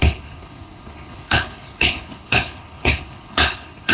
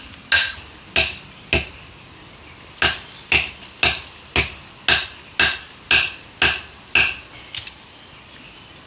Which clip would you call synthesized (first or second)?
first